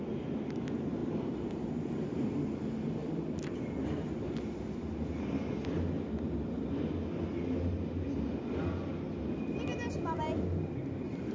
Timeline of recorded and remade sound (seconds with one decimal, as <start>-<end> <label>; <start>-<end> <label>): 0.0-1.0 recorded; 1.0-2.3 remade; 2.3-11.3 recorded